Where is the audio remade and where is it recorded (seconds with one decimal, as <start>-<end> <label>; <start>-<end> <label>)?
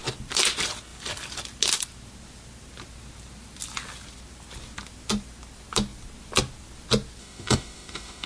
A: 0.0-7.2 recorded; 7.2-8.3 remade